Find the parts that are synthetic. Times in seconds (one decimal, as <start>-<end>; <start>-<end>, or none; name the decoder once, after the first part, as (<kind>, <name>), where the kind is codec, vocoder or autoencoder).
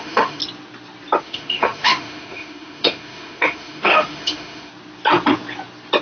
0.0-0.4 (autoencoder, DAC-VAE); 1.2-4.7